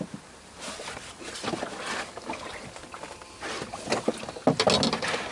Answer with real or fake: real